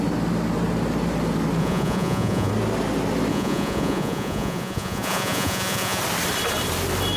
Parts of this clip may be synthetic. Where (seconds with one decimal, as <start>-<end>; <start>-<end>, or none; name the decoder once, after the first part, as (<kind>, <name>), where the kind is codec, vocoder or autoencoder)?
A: 1.6-2.5 (vocoder, Vocos); 3.3-6.0